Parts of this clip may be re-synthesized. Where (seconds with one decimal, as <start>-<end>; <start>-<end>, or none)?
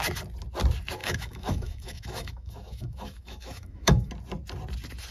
1.0-4.1